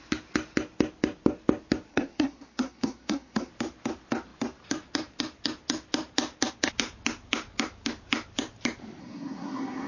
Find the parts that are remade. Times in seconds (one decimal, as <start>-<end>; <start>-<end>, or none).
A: 1.9-3.5; 9.0-9.9